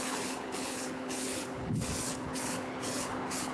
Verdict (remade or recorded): remade